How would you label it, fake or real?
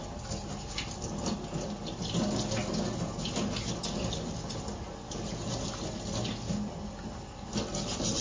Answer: real